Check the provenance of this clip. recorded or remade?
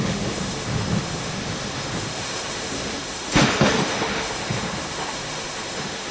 remade